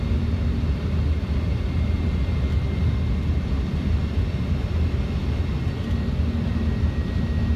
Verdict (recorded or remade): recorded